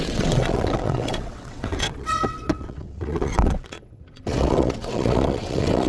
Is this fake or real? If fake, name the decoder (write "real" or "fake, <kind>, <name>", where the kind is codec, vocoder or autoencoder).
fake, vocoder, WaveNeXt